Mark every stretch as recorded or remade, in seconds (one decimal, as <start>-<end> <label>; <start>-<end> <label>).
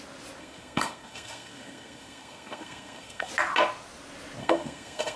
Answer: 0.0-0.4 recorded; 0.4-3.3 remade; 3.3-4.4 recorded; 4.4-5.2 remade